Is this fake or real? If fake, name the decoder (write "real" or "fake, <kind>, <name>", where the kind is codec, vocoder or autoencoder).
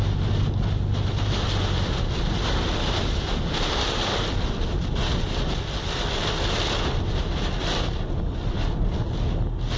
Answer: real